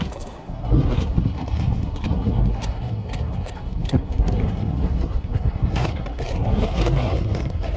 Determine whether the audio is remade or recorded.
remade